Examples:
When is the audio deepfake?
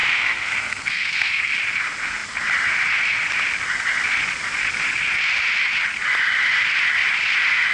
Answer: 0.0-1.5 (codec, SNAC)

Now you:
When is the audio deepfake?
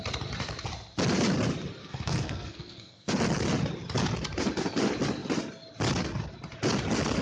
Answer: 1.8-3.1 (codec, SNAC)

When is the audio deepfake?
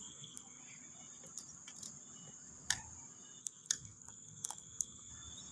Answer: 0.0-0.6 (codec, SNAC); 3.4-5.1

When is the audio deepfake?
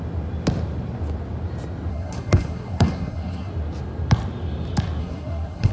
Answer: 1.9-3.5 (codec, SNAC); 5.0-5.7